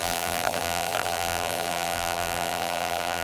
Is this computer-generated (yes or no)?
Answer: yes